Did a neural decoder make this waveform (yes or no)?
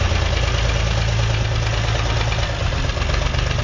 no